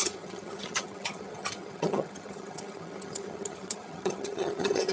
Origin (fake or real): fake